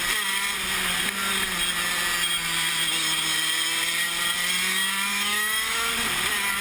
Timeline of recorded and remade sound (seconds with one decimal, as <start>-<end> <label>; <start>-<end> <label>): 0.0-5.1 recorded; 5.1-5.9 remade; 5.9-6.6 recorded